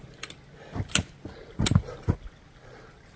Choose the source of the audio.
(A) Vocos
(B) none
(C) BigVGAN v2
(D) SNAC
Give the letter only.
B